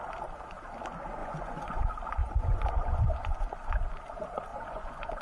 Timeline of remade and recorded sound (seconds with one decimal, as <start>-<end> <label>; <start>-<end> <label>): 0.0-1.2 recorded; 1.2-1.8 remade; 1.8-2.2 recorded; 2.2-3.7 remade; 3.7-4.5 recorded; 4.5-5.2 remade